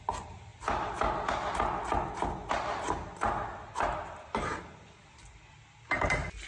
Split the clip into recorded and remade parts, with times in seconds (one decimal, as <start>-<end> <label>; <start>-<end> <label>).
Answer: 0.0-6.5 recorded